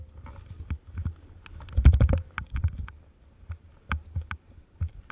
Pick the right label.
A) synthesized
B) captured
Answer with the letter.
B